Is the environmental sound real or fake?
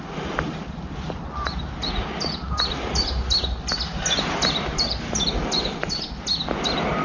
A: real